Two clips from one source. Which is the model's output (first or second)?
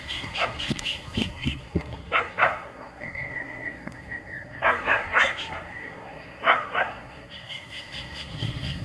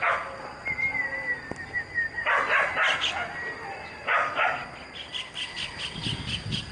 first